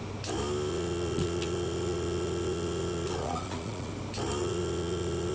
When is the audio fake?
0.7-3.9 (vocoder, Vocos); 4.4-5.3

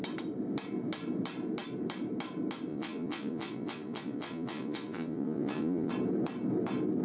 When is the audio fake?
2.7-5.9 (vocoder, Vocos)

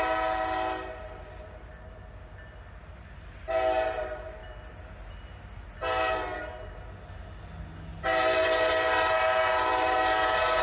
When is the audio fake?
none